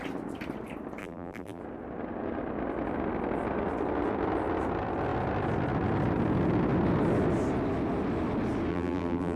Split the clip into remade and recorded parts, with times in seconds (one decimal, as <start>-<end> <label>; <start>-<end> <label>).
0.0-1.0 recorded; 1.0-1.6 remade; 1.6-8.7 recorded; 8.7-9.4 remade